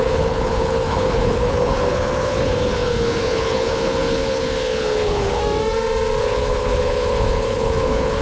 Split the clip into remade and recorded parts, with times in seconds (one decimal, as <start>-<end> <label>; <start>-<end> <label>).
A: 0.0-5.4 remade; 5.4-6.2 recorded; 6.2-8.2 remade